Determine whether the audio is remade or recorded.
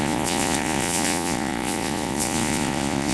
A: remade